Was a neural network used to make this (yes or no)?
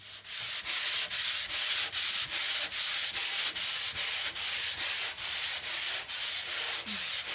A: no